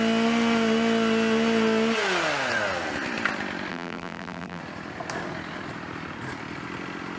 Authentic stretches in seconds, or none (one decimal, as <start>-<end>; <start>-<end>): 0.0-3.7; 4.6-7.2